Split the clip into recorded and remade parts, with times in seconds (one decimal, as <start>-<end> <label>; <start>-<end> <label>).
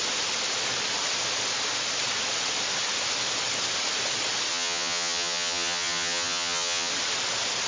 0.0-4.5 recorded; 4.5-6.9 remade; 6.9-7.7 recorded